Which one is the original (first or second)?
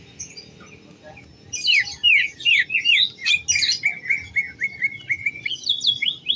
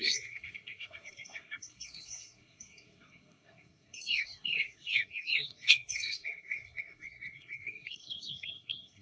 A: first